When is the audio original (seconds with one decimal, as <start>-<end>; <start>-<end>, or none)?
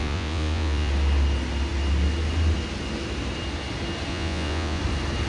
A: 0.9-4.1; 4.8-5.3